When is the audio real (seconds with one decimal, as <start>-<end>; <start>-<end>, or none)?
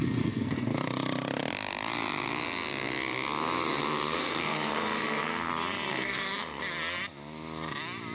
0.7-4.2; 5.5-5.9; 6.6-8.1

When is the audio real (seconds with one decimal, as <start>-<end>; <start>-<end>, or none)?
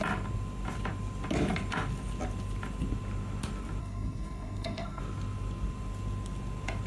0.0-3.8; 5.0-6.9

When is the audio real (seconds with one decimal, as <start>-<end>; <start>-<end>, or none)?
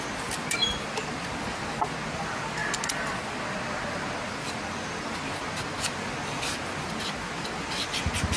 0.0-8.4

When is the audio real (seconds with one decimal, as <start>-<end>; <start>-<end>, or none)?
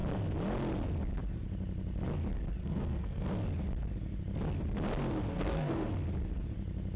0.0-2.6; 3.3-5.3; 5.9-7.0